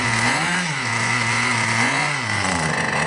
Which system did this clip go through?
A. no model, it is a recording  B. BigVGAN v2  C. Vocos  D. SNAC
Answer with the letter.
C